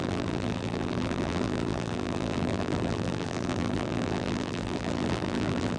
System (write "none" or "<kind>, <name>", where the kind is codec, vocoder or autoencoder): vocoder, BigVGAN v2